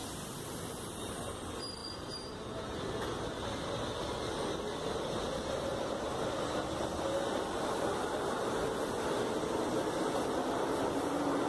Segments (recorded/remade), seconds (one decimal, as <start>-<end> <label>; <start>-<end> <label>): 0.0-1.3 remade; 1.3-1.8 recorded; 1.8-2.4 remade; 2.4-11.5 recorded